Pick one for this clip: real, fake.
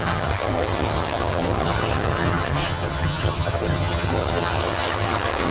fake